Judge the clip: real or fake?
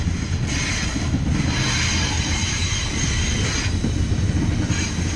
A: real